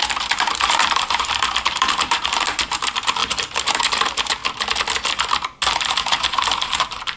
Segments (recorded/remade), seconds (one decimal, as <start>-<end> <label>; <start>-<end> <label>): 0.0-4.4 remade; 4.4-5.7 recorded; 5.7-7.2 remade